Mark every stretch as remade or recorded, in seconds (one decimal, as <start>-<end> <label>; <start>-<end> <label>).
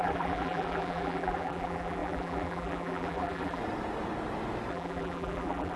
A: 0.0-3.6 remade; 3.6-4.7 recorded; 4.7-5.8 remade